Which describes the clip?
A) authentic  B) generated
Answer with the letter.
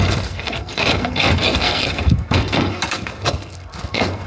B